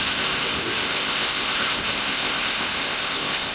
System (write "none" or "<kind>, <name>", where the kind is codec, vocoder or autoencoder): codec, ZipCodec